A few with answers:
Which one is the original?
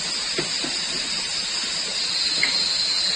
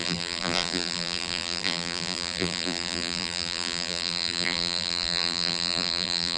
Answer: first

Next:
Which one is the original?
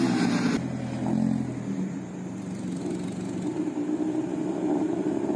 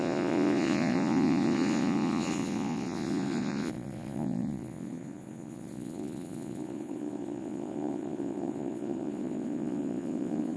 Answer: first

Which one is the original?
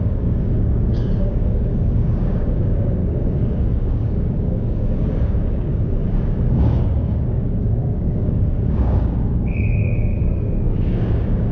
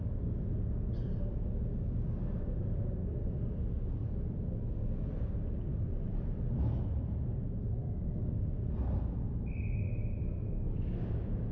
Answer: second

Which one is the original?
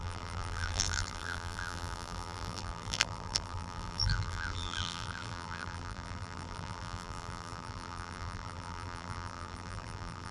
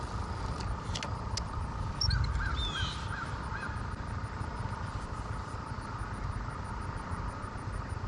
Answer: second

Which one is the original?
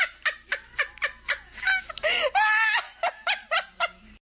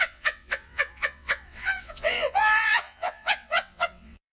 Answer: first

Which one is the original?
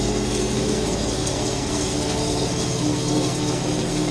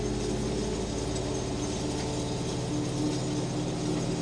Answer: second